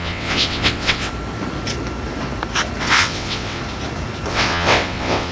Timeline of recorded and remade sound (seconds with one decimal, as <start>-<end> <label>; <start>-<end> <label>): 0.0-1.1 remade; 1.1-2.8 recorded; 2.8-3.6 remade; 3.6-4.3 recorded; 4.3-5.3 remade